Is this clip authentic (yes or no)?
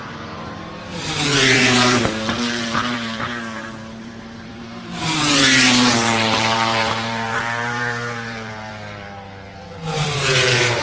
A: no